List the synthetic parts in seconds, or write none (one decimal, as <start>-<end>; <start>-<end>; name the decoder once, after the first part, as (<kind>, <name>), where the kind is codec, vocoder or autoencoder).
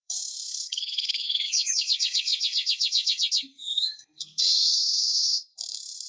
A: 0.0-6.1 (codec, SNAC)